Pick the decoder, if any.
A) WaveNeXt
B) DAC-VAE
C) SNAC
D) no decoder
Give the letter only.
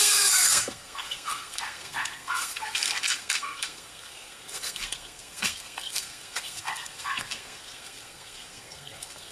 C